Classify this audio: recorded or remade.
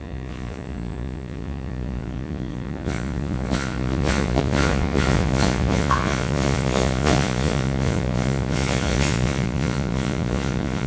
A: remade